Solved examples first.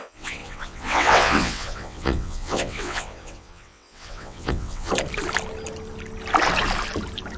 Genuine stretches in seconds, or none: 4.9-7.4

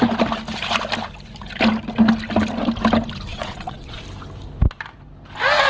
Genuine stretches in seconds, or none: 0.0-3.3; 4.0-5.7

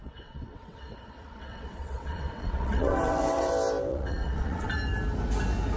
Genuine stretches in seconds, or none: 3.5-3.9; 4.7-5.8

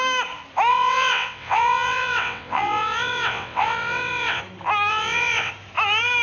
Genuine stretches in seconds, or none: 0.0-0.7; 4.4-4.9; 5.5-6.2

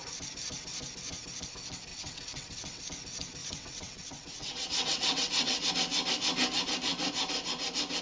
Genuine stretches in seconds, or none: 0.0-1.9; 2.8-3.4; 5.7-8.0